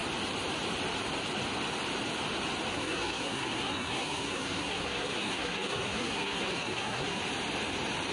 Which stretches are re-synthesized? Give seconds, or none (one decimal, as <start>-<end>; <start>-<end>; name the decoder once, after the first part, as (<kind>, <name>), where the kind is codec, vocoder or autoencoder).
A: 2.7-7.2 (codec, SNAC)